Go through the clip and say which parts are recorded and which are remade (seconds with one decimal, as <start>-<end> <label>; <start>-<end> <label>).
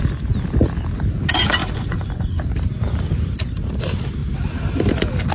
0.0-1.6 recorded; 1.6-2.4 remade; 2.4-5.3 recorded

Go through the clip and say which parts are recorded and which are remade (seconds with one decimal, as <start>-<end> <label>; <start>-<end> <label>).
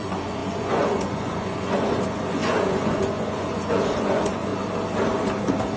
0.0-4.5 remade; 4.5-5.8 recorded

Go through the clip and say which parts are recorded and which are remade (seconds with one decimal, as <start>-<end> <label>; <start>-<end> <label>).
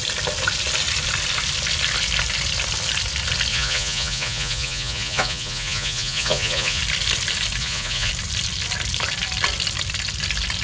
0.0-3.5 recorded; 3.5-6.8 remade; 6.8-7.6 recorded; 7.6-8.1 remade; 8.1-10.6 recorded